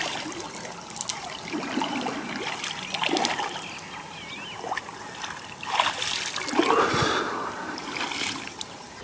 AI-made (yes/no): no